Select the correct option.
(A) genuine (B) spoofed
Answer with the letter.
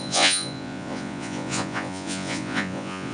B